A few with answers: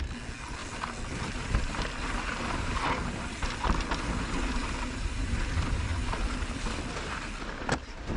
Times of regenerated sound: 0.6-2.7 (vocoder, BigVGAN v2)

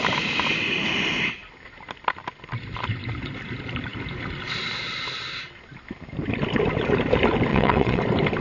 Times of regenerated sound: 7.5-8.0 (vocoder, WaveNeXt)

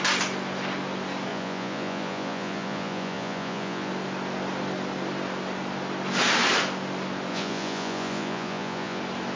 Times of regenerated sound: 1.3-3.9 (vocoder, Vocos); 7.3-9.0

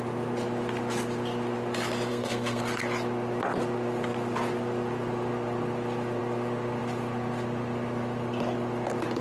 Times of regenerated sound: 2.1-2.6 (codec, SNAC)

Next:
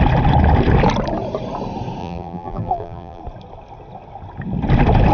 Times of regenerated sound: 2.0-3.2 (vocoder, BigVGAN v2)

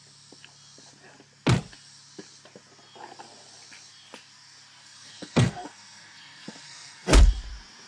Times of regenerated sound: 4.8-7.3 (codec, SNAC)